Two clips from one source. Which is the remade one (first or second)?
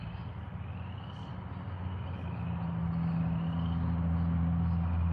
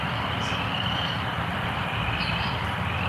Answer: second